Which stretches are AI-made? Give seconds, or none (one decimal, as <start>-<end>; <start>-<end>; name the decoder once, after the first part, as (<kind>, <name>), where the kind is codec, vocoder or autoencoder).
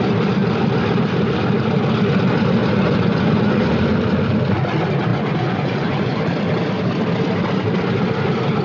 2.6-3.7 (vocoder, Vocos); 5.1-6.2